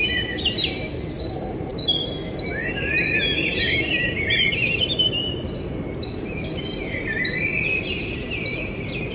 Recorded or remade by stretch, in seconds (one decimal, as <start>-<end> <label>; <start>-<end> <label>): 0.0-5.4 remade; 5.4-7.4 recorded; 7.4-9.1 remade